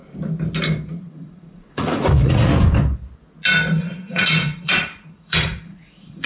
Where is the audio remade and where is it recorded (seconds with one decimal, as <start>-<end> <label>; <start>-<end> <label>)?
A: 0.0-0.9 recorded; 0.9-2.5 remade; 2.5-3.8 recorded; 3.8-6.3 remade